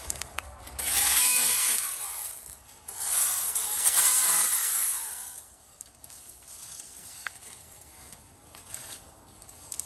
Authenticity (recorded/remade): remade